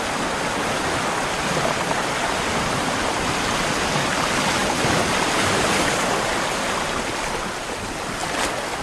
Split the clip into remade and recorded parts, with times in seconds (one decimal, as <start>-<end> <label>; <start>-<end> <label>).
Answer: 0.0-8.8 recorded